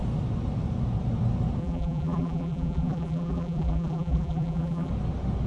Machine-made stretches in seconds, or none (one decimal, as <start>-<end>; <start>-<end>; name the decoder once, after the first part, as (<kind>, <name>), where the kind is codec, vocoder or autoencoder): 1.6-4.9 (vocoder, BigVGAN v2)